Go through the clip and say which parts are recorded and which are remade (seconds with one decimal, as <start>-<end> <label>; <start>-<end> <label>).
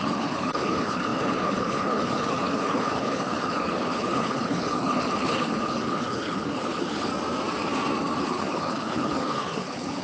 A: 0.0-7.1 remade; 7.1-8.2 recorded; 8.2-10.0 remade